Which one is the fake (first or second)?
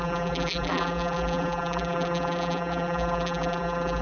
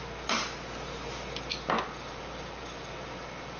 first